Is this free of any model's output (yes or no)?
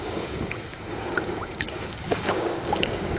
no